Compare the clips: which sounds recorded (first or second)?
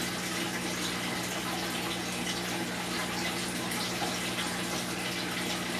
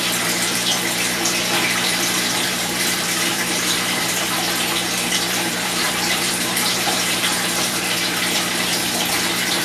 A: first